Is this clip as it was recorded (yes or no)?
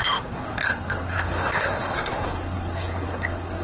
no